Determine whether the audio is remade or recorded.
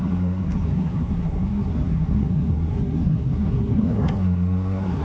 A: remade